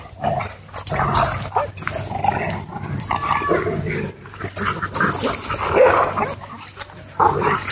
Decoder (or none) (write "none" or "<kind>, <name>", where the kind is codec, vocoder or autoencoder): none